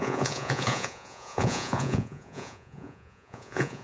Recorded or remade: remade